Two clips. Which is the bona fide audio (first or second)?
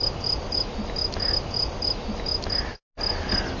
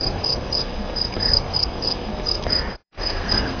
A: first